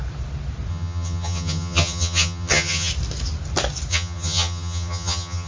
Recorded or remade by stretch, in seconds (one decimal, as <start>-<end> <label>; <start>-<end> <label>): 0.0-0.7 recorded; 0.7-2.9 remade; 2.9-3.9 recorded; 3.9-5.5 remade